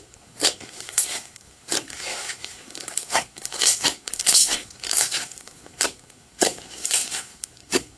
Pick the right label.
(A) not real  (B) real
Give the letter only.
A